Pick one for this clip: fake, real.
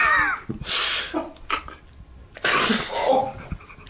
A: real